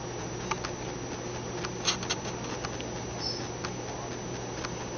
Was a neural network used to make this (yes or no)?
no